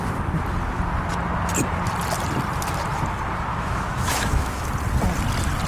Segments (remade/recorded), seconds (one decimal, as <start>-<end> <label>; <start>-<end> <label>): 0.0-3.5 recorded; 3.5-4.7 remade; 4.7-5.7 recorded